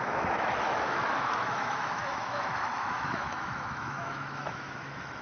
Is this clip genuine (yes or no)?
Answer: no